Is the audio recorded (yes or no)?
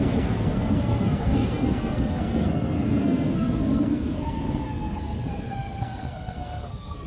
no